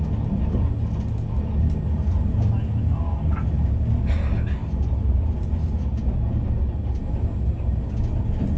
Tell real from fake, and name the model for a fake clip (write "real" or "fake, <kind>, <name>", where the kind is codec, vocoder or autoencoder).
real